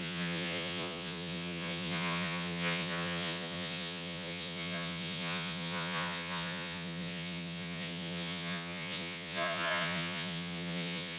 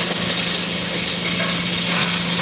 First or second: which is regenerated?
first